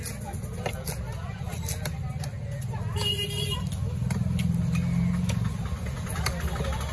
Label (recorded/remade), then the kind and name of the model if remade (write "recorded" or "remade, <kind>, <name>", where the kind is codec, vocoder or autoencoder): recorded